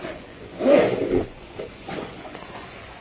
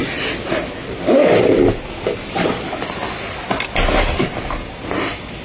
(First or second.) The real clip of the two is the second